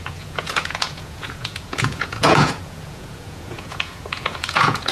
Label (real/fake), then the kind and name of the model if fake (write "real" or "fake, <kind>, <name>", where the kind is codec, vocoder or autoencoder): fake, vocoder, Vocos